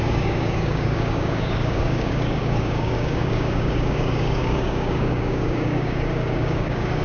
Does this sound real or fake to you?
fake